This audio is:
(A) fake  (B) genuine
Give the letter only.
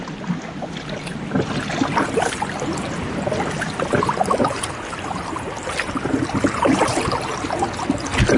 B